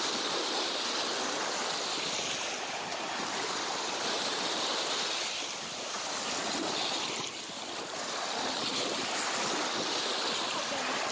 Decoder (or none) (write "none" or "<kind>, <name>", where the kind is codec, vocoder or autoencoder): none